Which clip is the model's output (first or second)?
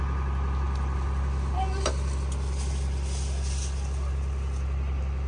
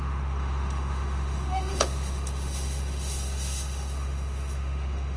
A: second